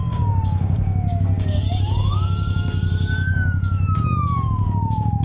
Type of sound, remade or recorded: remade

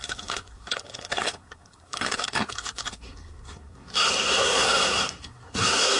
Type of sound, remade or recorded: remade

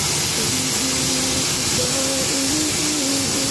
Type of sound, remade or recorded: recorded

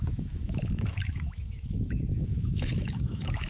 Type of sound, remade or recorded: remade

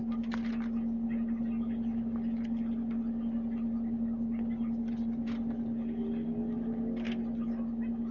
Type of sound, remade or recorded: recorded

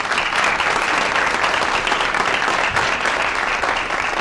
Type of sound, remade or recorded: recorded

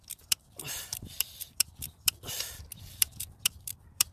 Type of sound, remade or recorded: remade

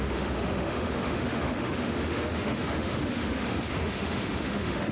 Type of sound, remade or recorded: remade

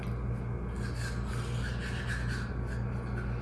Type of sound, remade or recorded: recorded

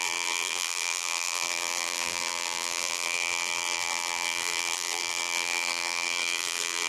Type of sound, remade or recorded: remade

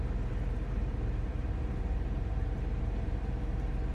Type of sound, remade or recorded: remade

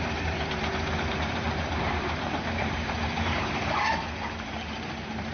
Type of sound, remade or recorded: remade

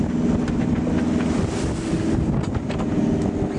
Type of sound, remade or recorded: recorded